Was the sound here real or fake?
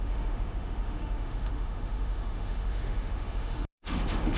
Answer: fake